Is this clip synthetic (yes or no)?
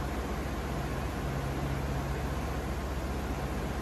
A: no